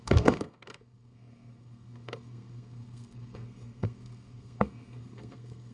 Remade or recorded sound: remade